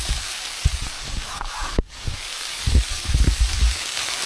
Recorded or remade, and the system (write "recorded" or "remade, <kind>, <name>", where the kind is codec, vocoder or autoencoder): remade, codec, DAC